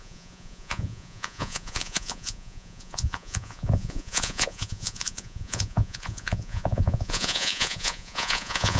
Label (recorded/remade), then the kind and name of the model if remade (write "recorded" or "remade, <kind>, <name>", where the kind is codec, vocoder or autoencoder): remade, vocoder, Vocos